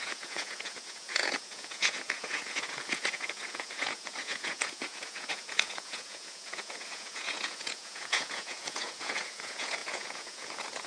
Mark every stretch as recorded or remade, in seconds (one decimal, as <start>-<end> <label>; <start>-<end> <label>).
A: 0.0-10.9 remade